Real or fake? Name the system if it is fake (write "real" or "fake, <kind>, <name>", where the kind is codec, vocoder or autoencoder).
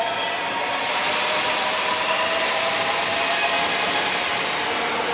real